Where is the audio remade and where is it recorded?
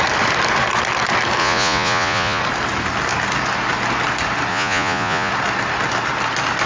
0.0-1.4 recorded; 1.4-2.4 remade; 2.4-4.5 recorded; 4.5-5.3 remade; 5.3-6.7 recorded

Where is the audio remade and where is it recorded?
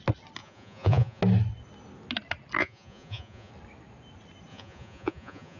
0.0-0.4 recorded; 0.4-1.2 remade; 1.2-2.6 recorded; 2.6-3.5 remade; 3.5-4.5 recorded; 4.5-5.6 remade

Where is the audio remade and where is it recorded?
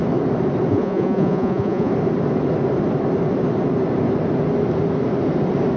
0.0-0.7 recorded; 0.7-1.9 remade; 1.9-5.8 recorded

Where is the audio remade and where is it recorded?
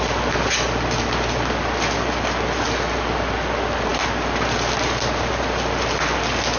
0.0-6.6 recorded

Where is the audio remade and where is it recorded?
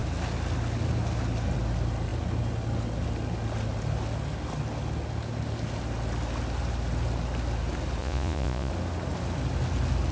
0.0-8.0 recorded; 8.0-8.7 remade; 8.7-10.1 recorded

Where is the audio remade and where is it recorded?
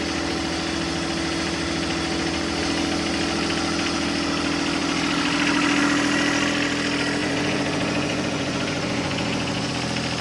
0.0-7.2 recorded; 7.2-9.7 remade; 9.7-10.2 recorded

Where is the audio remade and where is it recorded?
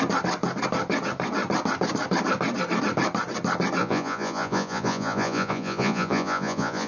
0.0-3.8 recorded; 3.8-6.9 remade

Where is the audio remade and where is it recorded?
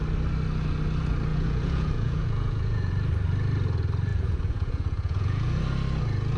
0.0-1.3 recorded; 1.3-2.9 remade; 2.9-4.1 recorded; 4.1-5.6 remade; 5.6-6.4 recorded